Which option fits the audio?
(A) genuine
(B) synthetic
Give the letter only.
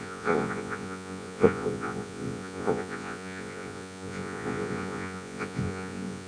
B